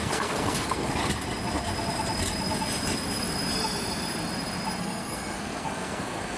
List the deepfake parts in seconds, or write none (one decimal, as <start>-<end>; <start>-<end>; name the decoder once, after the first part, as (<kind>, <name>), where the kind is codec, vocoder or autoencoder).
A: 0.0-1.0 (codec, SNAC); 4.8-6.4